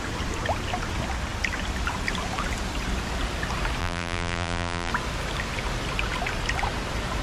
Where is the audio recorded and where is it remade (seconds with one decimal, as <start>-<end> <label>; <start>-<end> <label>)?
0.0-3.8 recorded; 3.8-4.9 remade; 4.9-7.2 recorded